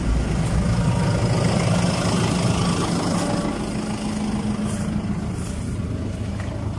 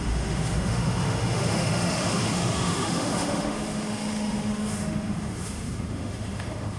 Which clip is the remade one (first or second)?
second